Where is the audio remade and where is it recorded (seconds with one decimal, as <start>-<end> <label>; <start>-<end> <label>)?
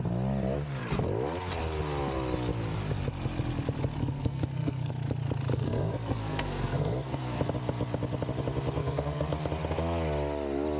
0.0-4.0 recorded; 4.0-4.9 remade; 4.9-5.5 recorded; 5.5-7.4 remade; 7.4-8.8 recorded; 8.8-9.3 remade; 9.3-10.8 recorded